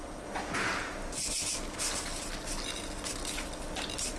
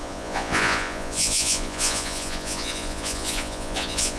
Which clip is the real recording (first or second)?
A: first